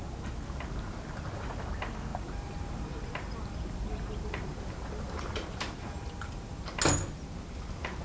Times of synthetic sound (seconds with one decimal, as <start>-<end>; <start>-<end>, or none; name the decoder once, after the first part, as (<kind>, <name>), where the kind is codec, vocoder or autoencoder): 2.1-6.8 (vocoder, BigVGAN v2)